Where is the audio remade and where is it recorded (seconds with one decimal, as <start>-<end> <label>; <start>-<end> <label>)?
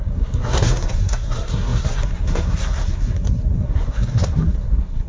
0.0-5.1 remade